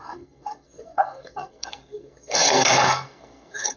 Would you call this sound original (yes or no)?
no